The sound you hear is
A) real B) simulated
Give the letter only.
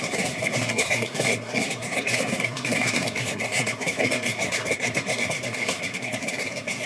B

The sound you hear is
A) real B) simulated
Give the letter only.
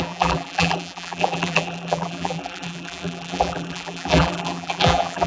B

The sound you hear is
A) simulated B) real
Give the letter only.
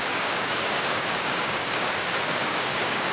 A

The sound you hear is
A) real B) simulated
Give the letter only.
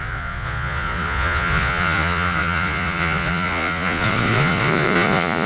B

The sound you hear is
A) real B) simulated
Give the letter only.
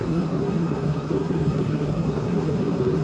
B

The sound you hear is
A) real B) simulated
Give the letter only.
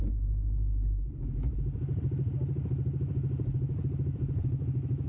A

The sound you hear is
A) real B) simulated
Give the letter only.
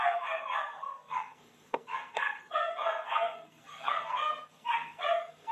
B